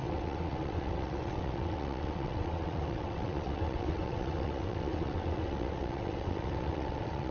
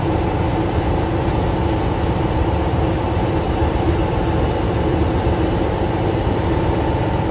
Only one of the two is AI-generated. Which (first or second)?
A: first